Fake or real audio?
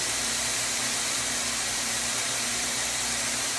fake